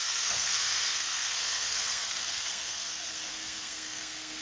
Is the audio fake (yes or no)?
yes